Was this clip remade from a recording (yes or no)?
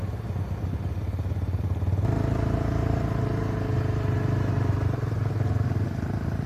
no